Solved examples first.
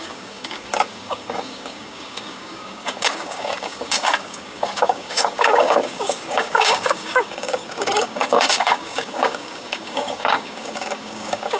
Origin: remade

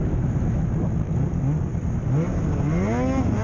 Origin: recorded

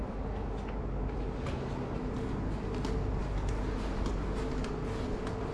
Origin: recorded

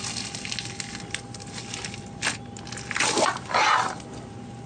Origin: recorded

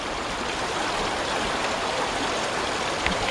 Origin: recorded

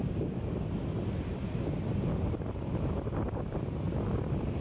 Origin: recorded